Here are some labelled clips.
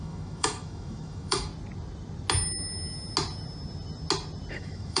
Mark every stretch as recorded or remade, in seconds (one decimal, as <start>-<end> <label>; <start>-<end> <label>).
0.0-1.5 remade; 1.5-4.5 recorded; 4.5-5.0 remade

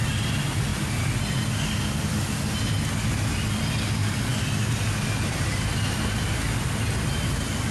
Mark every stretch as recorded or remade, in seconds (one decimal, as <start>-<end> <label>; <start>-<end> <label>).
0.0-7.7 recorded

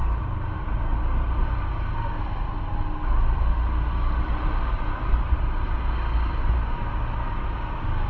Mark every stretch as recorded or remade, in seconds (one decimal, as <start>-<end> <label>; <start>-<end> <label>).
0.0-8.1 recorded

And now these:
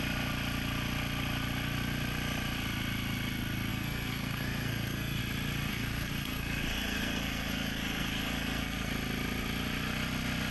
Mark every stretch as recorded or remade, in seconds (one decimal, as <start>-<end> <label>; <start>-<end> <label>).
0.0-3.7 recorded; 3.7-5.2 remade; 5.2-5.7 recorded; 5.7-8.9 remade; 8.9-10.5 recorded

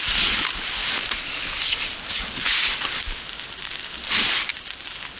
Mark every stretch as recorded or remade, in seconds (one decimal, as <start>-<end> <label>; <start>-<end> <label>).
0.0-5.2 recorded

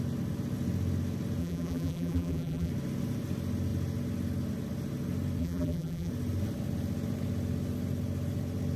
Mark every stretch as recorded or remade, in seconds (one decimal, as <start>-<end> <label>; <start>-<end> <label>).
0.0-1.4 recorded; 1.4-2.7 remade; 2.7-5.4 recorded; 5.4-6.1 remade; 6.1-8.8 recorded

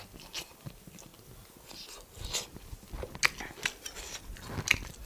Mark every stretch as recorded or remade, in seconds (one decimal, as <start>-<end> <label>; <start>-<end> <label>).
0.0-5.1 recorded